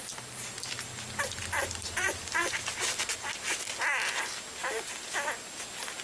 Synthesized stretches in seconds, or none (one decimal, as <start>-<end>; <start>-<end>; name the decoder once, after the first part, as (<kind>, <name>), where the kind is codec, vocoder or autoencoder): 1.6-3.6 (vocoder, BigVGAN v2); 4.6-5.1